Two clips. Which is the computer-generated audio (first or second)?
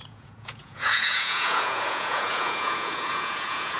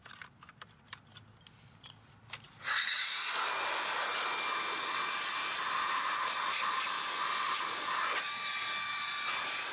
first